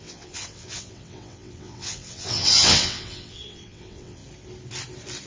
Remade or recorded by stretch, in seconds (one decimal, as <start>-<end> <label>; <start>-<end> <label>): 0.0-4.2 remade; 4.2-5.3 recorded